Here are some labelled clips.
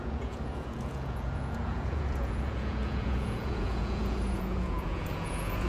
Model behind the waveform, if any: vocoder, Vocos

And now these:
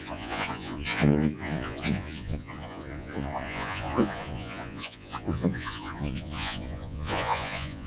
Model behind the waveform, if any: vocoder, Vocos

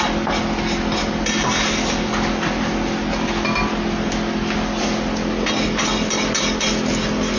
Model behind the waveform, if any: none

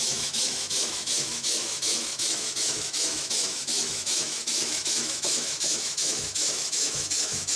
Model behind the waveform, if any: autoencoder, DAC-VAE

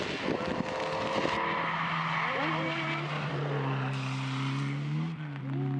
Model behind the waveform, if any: none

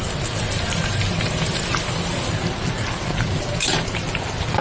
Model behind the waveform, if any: vocoder, BigVGAN v2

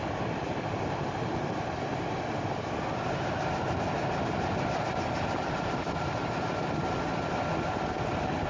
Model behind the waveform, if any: none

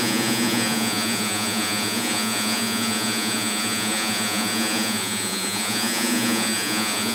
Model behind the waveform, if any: vocoder, Vocos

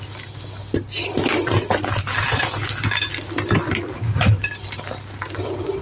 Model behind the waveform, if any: none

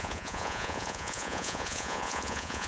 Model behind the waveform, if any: vocoder, Vocos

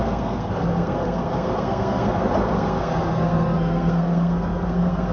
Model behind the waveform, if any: codec, SNAC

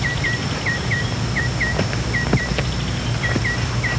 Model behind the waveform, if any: none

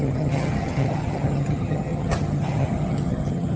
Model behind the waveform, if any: vocoder, HiFi-GAN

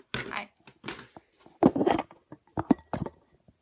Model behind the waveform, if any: none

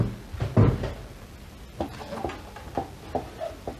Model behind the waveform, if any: none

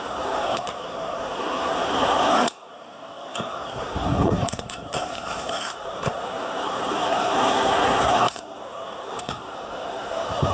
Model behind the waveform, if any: codec, SNAC